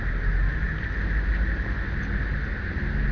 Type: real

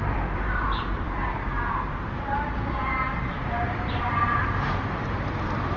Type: fake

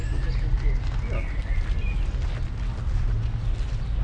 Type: real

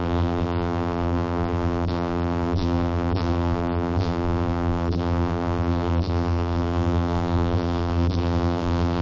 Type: fake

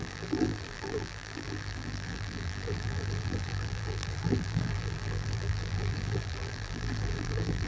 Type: fake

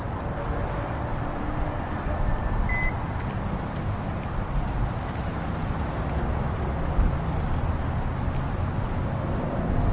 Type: real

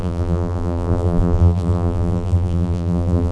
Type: fake